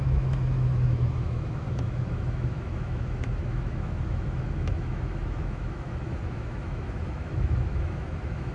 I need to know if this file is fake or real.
fake